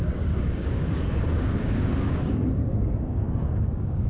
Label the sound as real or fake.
fake